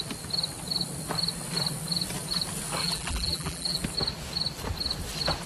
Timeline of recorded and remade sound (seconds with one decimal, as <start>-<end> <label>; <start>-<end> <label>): 0.0-2.8 recorded; 2.8-3.8 remade; 3.8-5.5 recorded